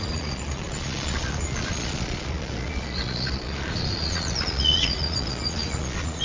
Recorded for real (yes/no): no